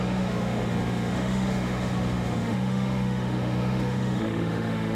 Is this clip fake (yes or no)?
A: yes